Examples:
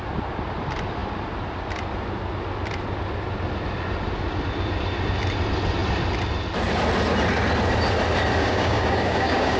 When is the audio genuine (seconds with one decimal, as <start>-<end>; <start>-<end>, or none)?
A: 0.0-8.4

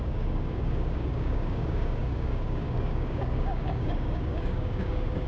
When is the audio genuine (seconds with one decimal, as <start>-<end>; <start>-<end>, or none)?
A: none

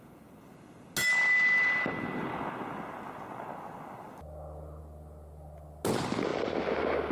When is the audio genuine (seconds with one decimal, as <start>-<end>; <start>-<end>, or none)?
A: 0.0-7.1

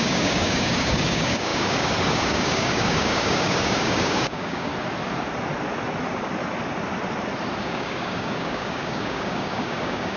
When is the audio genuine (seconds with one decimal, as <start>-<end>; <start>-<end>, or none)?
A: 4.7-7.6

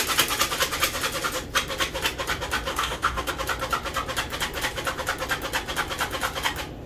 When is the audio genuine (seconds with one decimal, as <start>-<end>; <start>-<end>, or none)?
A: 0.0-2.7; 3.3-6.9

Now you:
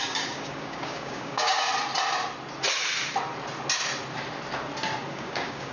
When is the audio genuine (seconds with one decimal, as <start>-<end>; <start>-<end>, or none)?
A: 1.7-5.1